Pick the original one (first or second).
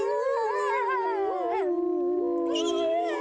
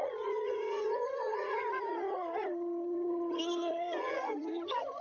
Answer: first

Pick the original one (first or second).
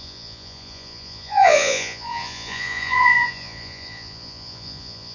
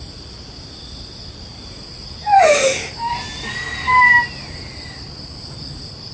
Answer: second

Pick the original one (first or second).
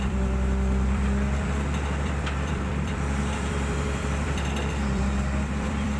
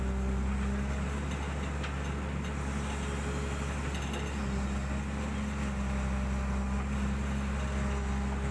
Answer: second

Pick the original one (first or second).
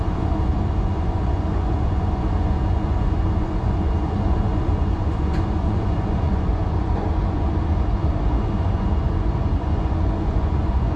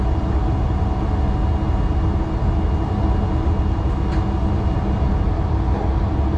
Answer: second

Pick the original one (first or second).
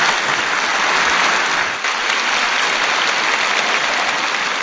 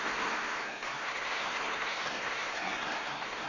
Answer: first